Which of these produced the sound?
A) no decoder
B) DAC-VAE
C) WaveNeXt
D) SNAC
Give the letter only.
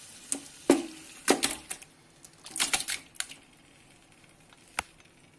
A